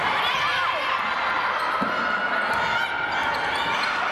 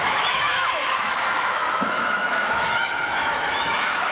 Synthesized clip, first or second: second